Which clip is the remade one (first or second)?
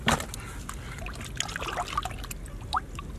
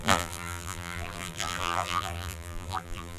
second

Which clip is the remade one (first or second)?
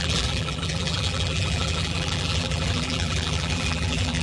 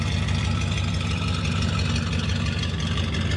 first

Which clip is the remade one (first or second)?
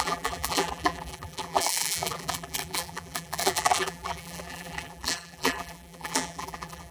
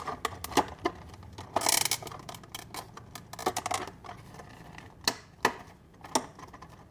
first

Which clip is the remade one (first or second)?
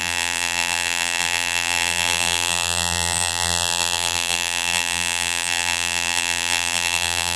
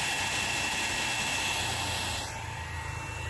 first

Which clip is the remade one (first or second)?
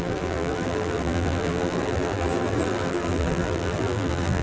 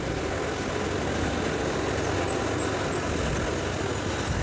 first